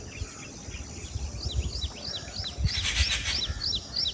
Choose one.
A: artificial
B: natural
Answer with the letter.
B